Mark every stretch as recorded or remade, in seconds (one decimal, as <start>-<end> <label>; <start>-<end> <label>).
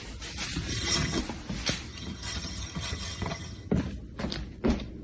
0.0-0.7 recorded; 0.7-1.2 remade; 1.2-1.9 recorded; 1.9-3.7 remade; 3.7-5.0 recorded